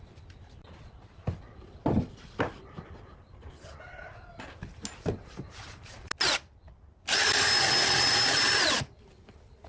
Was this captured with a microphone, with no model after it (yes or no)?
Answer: yes